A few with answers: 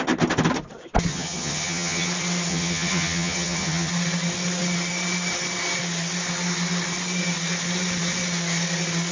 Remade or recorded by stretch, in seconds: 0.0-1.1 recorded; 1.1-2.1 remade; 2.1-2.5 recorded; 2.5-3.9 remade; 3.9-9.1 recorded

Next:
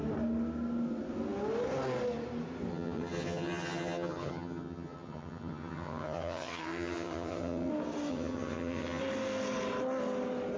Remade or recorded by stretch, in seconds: 0.0-2.7 recorded; 2.7-7.7 remade; 7.7-8.1 recorded; 8.1-9.0 remade; 9.0-10.6 recorded

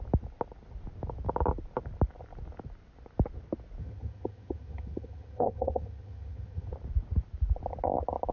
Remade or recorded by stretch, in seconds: 0.0-3.8 recorded; 3.8-6.7 remade; 6.7-8.3 recorded

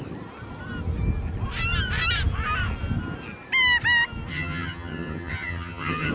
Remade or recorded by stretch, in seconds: 0.0-4.3 recorded; 4.3-6.1 remade

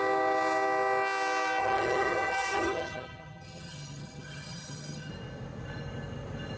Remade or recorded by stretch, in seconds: 0.0-1.6 recorded; 1.6-5.1 remade; 5.1-6.6 recorded

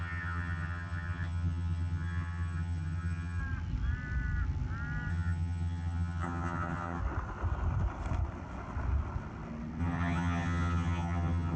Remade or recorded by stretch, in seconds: 0.0-3.4 remade; 3.4-5.1 recorded; 5.1-7.0 remade; 7.0-9.8 recorded; 9.8-11.6 remade